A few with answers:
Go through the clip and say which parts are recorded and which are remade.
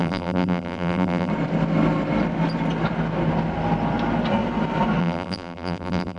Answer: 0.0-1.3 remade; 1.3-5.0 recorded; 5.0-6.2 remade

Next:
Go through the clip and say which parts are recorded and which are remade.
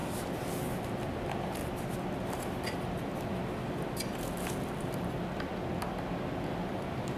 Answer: 0.0-1.0 recorded; 1.0-1.6 remade; 1.6-4.8 recorded; 4.8-5.5 remade; 5.5-6.7 recorded; 6.7-7.2 remade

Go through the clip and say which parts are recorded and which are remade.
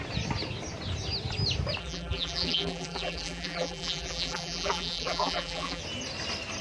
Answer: 0.0-1.8 recorded; 1.8-5.8 remade; 5.8-6.6 recorded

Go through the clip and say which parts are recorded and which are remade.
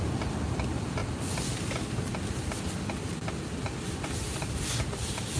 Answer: 0.0-1.0 recorded; 1.0-3.1 remade; 3.1-5.4 recorded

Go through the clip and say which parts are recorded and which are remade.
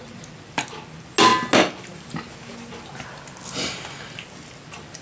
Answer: 0.0-5.0 recorded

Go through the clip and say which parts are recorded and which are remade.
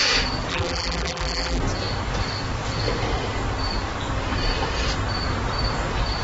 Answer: 0.0-0.5 recorded; 0.5-1.6 remade; 1.6-6.2 recorded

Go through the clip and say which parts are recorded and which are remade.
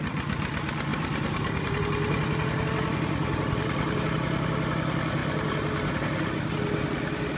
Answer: 0.0-0.9 recorded; 0.9-1.8 remade; 1.8-2.9 recorded; 2.9-4.5 remade; 4.5-7.4 recorded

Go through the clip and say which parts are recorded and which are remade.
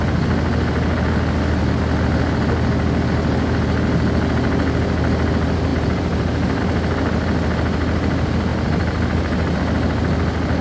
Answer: 0.0-5.7 recorded; 5.7-6.6 remade; 6.6-8.5 recorded; 8.5-9.6 remade; 9.6-10.6 recorded